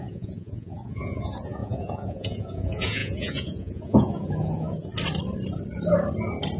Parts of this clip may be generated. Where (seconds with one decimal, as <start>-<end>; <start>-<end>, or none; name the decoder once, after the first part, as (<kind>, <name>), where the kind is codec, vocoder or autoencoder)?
0.0-4.9 (vocoder, Vocos)